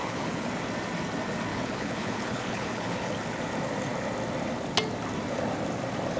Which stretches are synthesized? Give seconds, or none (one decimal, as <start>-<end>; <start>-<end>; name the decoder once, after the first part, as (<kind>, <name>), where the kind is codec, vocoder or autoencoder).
0.0-0.5 (codec, HILCodec); 1.5-3.1